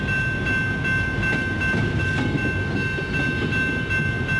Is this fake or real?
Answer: real